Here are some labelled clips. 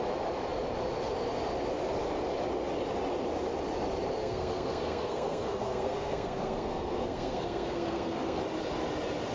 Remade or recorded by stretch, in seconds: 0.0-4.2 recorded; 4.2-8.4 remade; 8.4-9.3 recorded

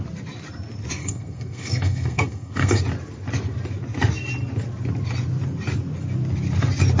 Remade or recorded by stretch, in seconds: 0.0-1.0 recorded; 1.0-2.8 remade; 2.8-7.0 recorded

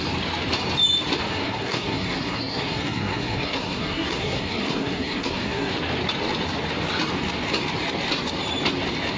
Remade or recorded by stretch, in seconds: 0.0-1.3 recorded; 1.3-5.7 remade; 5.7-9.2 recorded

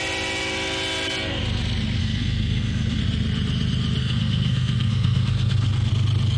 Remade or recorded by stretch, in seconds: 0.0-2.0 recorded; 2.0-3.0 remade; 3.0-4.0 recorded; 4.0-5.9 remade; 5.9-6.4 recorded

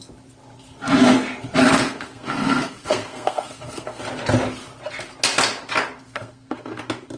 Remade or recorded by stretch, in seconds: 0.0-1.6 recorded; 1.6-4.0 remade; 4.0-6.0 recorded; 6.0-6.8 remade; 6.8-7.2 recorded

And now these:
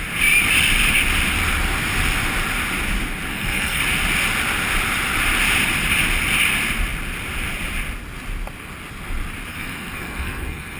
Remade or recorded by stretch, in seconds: 0.0-3.3 recorded; 3.3-3.8 remade; 3.8-9.5 recorded; 9.5-10.8 remade

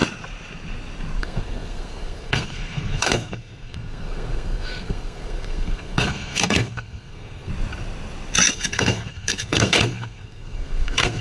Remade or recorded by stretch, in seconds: 0.0-1.2 recorded; 1.2-7.5 remade; 7.5-8.5 recorded; 8.5-11.2 remade